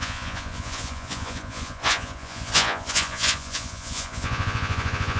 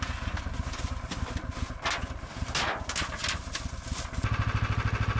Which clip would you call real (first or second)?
second